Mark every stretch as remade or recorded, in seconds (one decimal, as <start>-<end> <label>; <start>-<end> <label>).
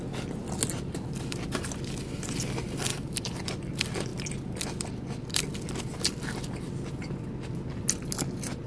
0.0-2.9 recorded; 2.9-3.6 remade; 3.6-4.1 recorded; 4.1-5.8 remade; 5.8-8.7 recorded